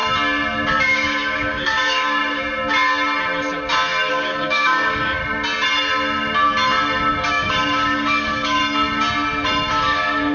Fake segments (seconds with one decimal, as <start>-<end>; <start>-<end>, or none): 0.8-2.2; 4.1-5.2; 7.3-8.6; 9.7-10.3

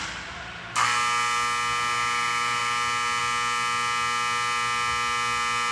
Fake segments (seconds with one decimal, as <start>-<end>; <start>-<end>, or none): none

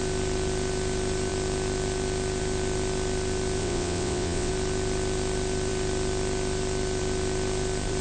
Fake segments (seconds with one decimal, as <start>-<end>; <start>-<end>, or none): 3.6-4.5